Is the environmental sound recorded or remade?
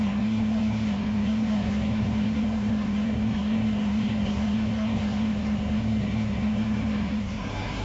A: remade